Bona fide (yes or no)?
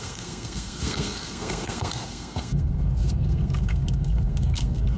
no